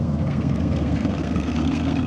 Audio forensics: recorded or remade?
remade